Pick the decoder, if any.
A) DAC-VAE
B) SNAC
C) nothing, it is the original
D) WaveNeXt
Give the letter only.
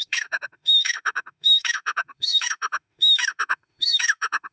A